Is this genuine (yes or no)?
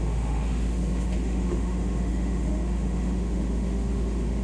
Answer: no